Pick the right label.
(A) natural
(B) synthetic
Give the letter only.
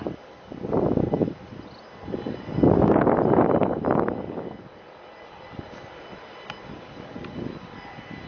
A